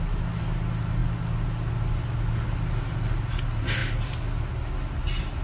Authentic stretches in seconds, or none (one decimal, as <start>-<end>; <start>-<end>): 0.0-5.4